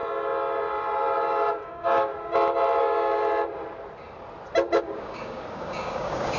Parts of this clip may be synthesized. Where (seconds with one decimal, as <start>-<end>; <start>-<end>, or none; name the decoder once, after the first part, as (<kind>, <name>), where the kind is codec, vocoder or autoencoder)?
1.5-2.1 (codec, DAC); 2.8-3.2; 4.8-6.4

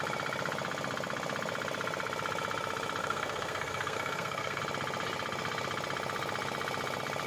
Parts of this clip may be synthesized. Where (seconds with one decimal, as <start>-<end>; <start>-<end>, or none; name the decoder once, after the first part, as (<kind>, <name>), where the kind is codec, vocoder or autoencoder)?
3.0-4.6 (codec, SNAC)